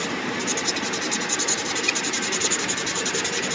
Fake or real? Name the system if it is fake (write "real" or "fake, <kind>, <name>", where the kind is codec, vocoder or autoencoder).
real